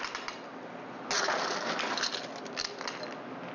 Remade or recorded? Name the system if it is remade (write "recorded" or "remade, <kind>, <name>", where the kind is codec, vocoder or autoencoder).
recorded